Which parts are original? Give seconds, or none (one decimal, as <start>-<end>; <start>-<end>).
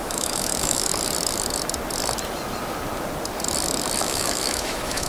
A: 0.9-4.0